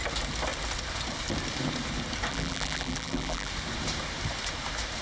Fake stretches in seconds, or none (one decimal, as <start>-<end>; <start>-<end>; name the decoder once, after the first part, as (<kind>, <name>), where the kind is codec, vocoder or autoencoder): 2.3-3.5 (vocoder, BigVGAN v2)